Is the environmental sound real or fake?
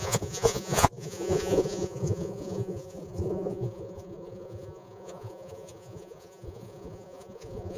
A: fake